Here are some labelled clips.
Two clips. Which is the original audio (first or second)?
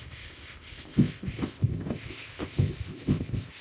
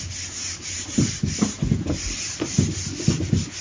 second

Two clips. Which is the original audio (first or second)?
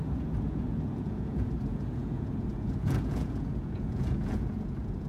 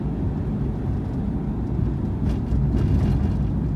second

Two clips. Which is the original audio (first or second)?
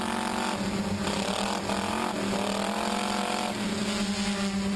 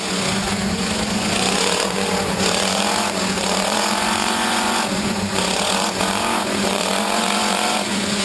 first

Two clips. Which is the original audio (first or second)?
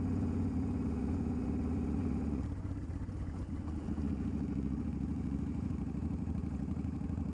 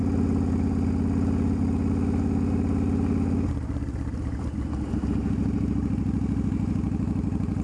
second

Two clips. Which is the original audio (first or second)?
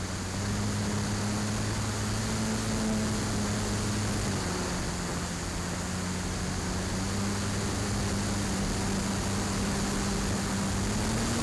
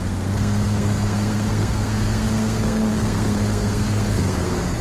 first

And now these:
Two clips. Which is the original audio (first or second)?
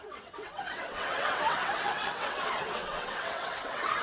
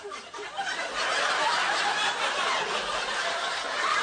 second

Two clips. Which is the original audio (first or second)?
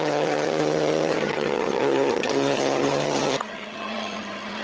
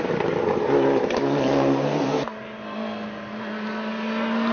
second